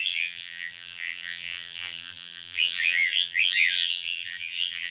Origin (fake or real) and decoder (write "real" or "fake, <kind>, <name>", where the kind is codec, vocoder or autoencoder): fake, vocoder, BigVGAN v2